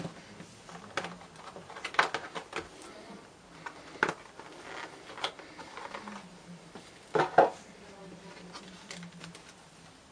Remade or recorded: recorded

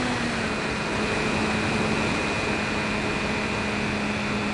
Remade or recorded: recorded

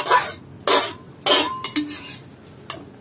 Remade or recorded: recorded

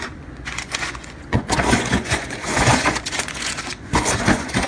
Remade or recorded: remade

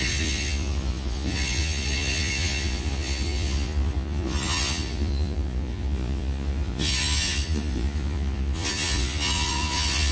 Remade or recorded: remade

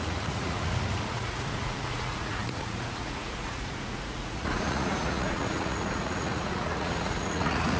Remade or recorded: remade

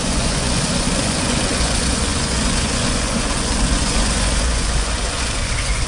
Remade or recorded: remade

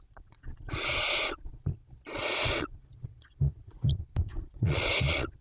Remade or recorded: remade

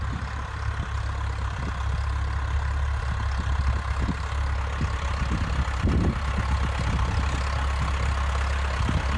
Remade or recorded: recorded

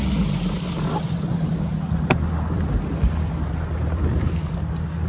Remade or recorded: recorded